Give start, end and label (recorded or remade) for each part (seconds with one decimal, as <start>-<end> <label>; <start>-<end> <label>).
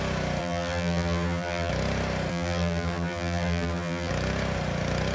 0.0-0.4 recorded; 0.4-1.7 remade; 1.7-2.3 recorded; 2.3-4.1 remade; 4.1-5.1 recorded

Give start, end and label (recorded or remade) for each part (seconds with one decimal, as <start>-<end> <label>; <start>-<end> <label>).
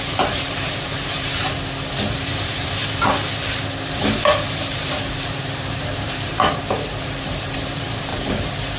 0.0-1.3 remade; 1.3-2.1 recorded; 2.1-2.8 remade; 2.8-4.5 recorded; 4.5-8.8 remade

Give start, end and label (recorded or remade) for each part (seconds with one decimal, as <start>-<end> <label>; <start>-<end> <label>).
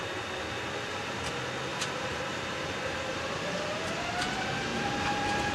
0.0-1.7 recorded; 1.7-4.1 remade; 4.1-4.7 recorded; 4.7-5.5 remade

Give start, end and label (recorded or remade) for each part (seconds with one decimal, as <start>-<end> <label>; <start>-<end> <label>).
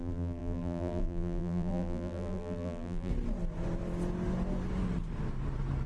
0.0-3.1 remade; 3.1-5.9 recorded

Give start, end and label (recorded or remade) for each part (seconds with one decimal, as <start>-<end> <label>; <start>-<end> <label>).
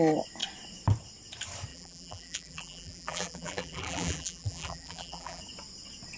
0.0-1.7 recorded; 1.7-5.4 remade; 5.4-6.2 recorded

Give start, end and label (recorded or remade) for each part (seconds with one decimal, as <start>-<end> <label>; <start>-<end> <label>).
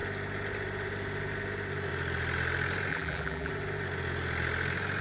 0.0-2.9 recorded; 2.9-3.5 remade; 3.5-5.0 recorded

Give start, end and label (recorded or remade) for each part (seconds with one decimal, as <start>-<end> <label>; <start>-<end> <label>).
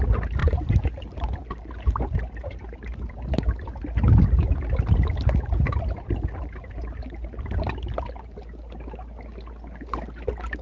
0.0-10.6 recorded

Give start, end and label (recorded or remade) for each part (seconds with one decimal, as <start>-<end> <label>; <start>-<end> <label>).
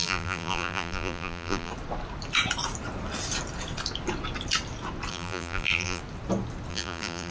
0.0-1.7 remade; 1.7-5.1 recorded; 5.1-6.0 remade; 6.0-6.7 recorded; 6.7-7.3 remade